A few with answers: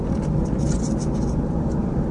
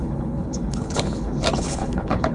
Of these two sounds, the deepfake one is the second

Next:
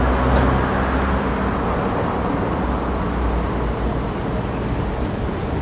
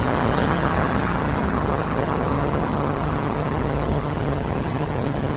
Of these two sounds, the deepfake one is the second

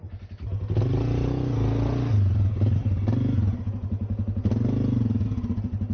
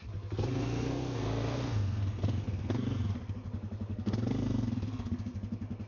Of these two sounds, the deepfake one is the second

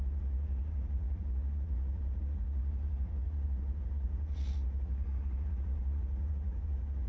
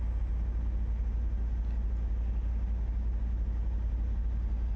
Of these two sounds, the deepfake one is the first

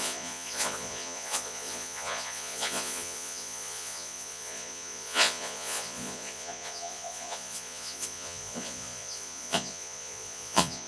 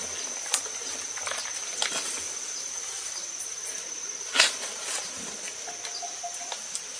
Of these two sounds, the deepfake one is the first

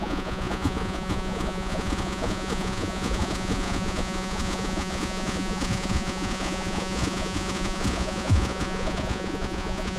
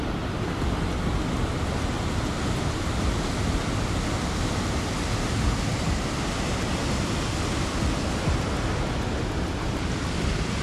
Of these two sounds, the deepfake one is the first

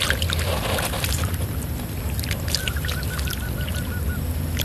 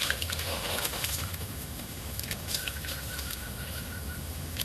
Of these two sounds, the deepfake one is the second